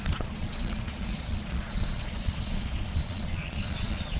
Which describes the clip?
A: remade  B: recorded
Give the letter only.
A